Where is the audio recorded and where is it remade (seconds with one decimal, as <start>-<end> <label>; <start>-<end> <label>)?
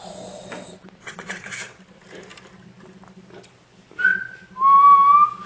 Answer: 0.0-1.0 recorded; 1.0-1.5 remade; 1.5-5.5 recorded